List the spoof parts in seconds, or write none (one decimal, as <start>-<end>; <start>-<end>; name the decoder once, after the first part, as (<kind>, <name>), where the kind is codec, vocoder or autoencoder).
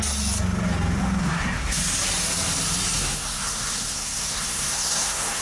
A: 1.2-1.8 (codec, SNAC); 3.0-5.4